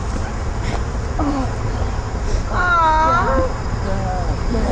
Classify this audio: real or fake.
real